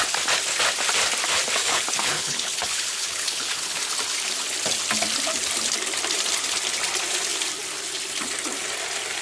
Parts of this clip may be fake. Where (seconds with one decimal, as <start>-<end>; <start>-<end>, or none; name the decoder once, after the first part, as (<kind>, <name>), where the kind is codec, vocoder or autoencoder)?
1.6-3.8 (codec, HILCodec)